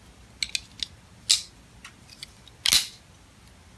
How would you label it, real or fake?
real